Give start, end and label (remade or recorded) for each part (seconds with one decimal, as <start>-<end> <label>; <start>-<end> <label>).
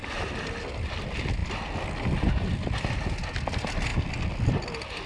0.0-5.1 recorded